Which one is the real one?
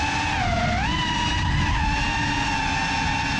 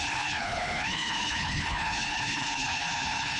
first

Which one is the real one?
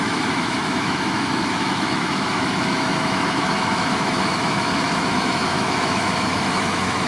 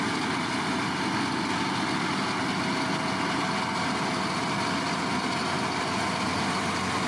second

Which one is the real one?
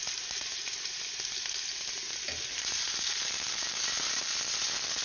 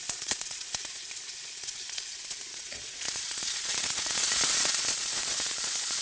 first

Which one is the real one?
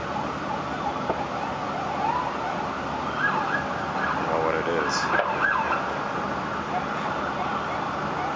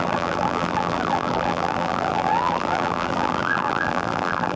first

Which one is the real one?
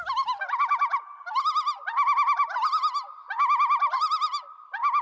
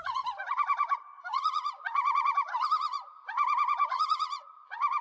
first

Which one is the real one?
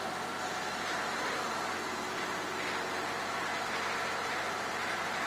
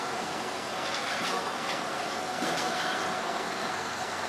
first